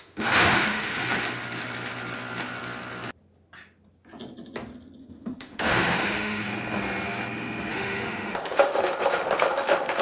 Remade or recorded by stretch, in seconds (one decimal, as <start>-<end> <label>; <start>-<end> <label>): 0.0-1.0 remade; 1.0-5.0 recorded; 5.0-6.4 remade; 6.4-7.7 recorded; 7.7-10.0 remade